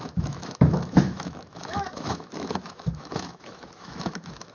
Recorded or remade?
remade